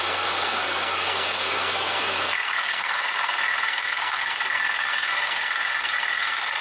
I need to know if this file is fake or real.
fake